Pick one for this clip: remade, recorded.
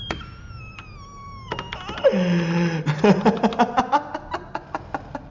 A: recorded